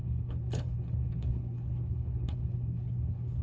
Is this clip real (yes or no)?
no